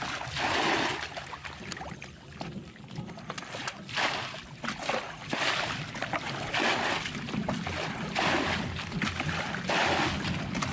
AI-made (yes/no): no